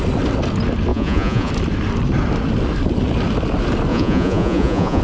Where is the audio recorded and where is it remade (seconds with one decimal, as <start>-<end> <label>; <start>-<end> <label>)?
0.0-0.9 recorded; 0.9-1.5 remade; 1.5-3.9 recorded; 3.9-5.0 remade